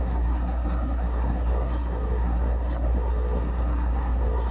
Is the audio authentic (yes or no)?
no